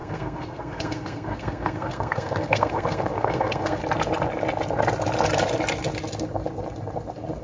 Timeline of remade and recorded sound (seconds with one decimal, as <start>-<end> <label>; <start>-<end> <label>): 0.0-3.8 remade; 3.8-7.4 recorded